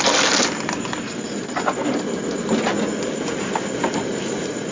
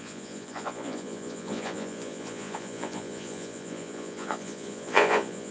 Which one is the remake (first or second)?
second